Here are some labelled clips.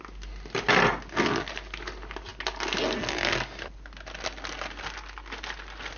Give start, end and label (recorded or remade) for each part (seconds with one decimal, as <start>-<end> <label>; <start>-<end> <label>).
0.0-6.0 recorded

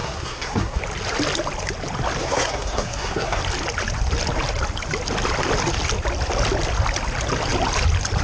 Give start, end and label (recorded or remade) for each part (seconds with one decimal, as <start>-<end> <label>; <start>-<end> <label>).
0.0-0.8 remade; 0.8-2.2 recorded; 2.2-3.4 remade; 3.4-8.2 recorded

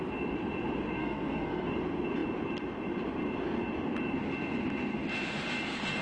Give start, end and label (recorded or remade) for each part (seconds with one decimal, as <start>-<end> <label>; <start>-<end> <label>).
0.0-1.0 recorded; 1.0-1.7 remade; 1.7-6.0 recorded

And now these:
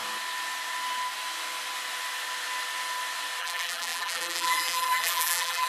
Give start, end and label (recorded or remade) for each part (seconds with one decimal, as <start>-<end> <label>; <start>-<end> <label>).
0.0-3.4 recorded; 3.4-5.7 remade

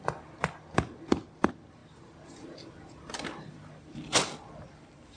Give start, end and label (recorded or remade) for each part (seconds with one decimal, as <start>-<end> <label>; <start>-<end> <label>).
0.0-5.2 remade